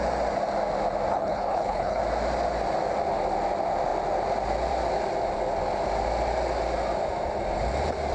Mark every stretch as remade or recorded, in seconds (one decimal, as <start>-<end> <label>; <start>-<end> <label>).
0.0-1.1 recorded; 1.1-2.0 remade; 2.0-8.1 recorded